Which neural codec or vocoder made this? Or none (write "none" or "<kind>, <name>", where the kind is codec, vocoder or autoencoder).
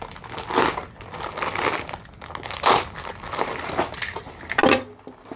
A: none